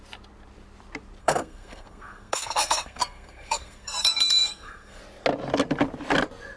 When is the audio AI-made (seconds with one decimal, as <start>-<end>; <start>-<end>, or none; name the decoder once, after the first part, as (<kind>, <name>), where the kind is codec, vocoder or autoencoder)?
1.2-5.0 (codec, SNAC)

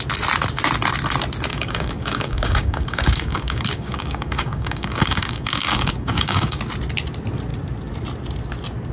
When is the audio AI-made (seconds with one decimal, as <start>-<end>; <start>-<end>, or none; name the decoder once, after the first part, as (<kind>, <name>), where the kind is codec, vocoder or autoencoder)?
1.5-6.6 (codec, DAC)